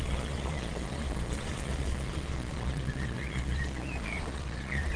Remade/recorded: remade